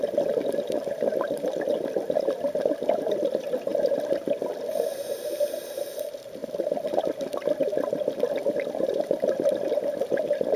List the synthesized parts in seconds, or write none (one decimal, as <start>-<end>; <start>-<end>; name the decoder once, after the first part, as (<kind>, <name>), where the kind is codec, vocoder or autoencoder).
0.0-3.7 (vocoder, BigVGAN v2); 4.7-10.6